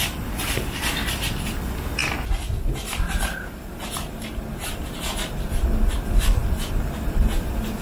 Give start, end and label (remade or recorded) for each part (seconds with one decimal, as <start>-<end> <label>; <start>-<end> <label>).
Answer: 0.0-7.8 recorded